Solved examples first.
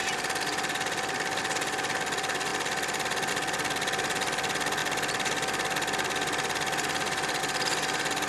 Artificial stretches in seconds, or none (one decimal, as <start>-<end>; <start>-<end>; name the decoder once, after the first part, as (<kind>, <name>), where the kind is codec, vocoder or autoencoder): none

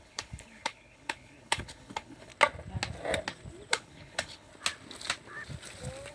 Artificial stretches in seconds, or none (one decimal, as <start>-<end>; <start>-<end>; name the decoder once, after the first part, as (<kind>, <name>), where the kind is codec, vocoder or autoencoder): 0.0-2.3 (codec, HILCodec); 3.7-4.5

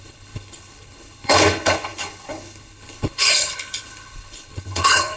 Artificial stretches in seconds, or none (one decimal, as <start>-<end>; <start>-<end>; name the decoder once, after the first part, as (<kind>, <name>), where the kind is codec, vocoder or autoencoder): 0.0-5.2 (codec, HILCodec)